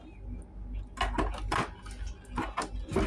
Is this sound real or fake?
real